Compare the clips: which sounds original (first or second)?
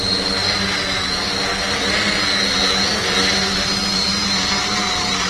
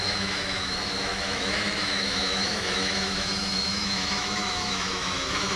first